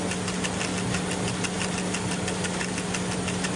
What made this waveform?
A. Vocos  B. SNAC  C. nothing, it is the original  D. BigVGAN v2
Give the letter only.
C